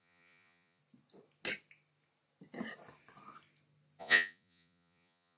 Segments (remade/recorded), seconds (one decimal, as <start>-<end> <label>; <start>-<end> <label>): 0.0-0.8 remade; 0.8-4.0 recorded; 4.0-5.4 remade